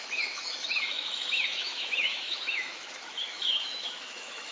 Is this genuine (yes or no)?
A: no